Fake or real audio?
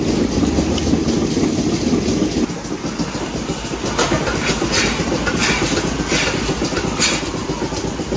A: real